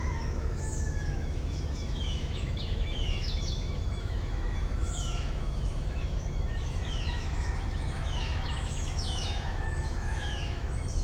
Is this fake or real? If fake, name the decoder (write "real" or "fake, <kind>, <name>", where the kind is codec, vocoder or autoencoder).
fake, autoencoder, DAC-VAE